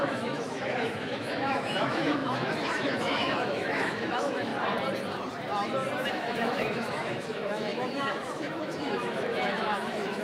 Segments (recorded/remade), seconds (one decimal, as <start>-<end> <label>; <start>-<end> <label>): 0.0-4.5 remade; 4.5-6.1 recorded; 6.1-10.2 remade